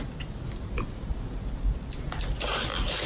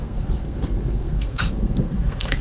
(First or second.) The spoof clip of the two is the second